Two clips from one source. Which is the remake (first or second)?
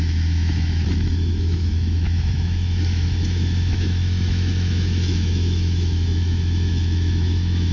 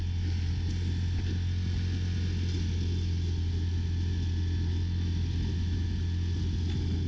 first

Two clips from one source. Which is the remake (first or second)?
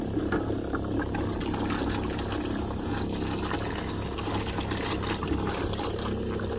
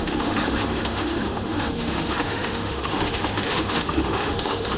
second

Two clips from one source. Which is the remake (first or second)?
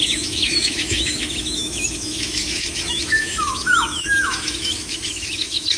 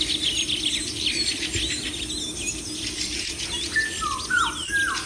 first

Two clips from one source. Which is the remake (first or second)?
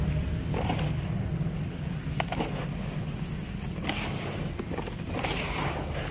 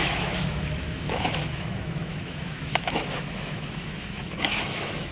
second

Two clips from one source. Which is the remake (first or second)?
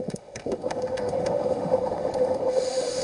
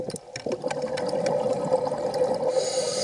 first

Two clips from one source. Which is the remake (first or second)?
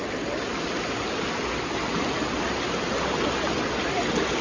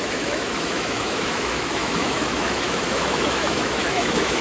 second